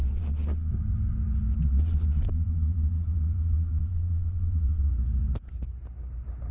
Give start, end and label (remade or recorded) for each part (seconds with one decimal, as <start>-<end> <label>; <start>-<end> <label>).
0.0-0.7 remade; 0.7-1.6 recorded; 1.6-4.9 remade; 4.9-6.5 recorded